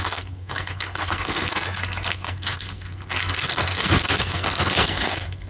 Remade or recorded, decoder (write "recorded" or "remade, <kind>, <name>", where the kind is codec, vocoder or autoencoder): remade, codec, SNAC